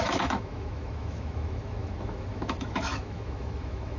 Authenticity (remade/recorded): remade